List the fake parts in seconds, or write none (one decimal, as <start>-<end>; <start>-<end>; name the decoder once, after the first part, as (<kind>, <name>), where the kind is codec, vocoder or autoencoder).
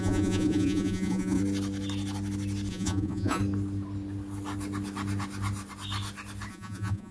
0.0-1.4 (vocoder, Vocos); 2.7-3.4; 6.5-7.1